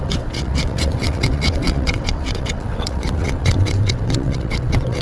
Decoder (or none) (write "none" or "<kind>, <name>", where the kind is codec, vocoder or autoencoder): vocoder, WaveNeXt